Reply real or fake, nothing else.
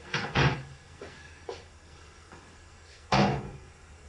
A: fake